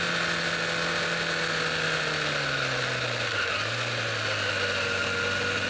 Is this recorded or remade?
recorded